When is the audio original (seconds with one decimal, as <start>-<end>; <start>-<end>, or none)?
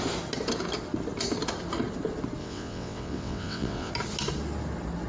0.0-2.4; 3.9-5.1